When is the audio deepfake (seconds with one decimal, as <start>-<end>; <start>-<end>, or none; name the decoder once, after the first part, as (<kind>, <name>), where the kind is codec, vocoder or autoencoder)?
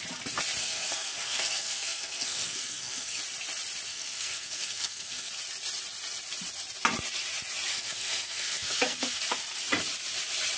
0.6-3.2 (codec, SNAC); 3.9-5.3; 7.7-9.2